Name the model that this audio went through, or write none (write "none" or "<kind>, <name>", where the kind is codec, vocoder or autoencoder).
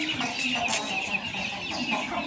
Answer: none